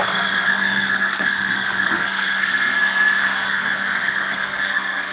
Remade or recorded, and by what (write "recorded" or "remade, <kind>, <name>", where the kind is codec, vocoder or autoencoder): remade, codec, SNAC